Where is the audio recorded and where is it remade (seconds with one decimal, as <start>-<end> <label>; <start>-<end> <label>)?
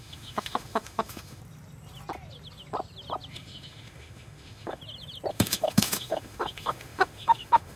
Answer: 0.0-1.4 remade; 1.4-3.3 recorded; 3.3-4.8 remade; 4.8-5.3 recorded; 5.3-7.8 remade